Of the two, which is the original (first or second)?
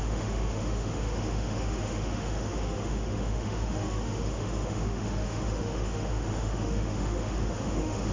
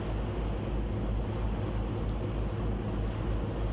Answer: second